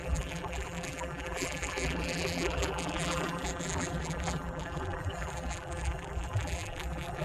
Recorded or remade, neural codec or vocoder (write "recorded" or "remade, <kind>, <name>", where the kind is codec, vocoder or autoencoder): remade, vocoder, BigVGAN v2